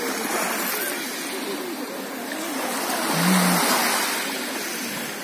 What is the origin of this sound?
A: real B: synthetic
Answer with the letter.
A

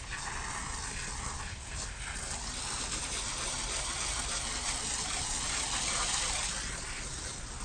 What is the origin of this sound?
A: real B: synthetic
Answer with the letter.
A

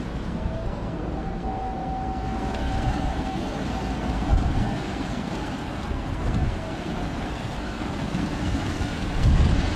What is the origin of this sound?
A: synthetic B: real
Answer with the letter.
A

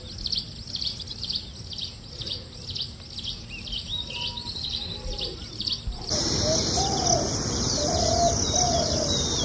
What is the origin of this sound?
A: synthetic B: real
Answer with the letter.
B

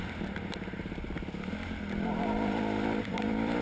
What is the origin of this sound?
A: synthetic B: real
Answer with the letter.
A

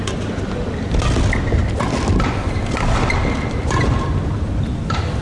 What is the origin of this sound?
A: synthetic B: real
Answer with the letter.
B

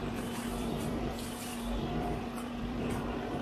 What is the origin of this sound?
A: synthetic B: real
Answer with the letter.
A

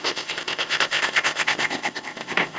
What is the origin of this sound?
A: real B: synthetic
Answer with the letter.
B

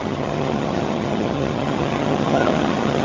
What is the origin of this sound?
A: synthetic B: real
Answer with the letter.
A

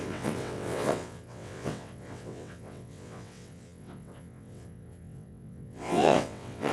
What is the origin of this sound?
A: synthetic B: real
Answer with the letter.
A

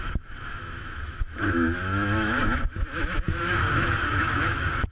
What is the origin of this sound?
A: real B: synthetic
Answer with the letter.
B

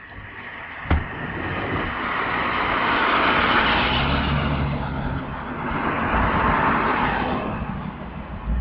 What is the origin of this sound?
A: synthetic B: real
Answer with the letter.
B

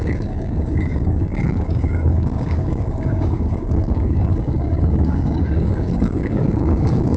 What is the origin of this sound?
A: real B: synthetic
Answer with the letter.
B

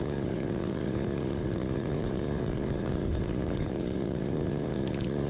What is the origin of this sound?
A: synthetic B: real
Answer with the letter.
A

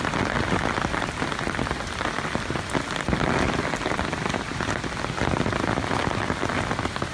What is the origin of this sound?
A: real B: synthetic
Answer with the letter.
A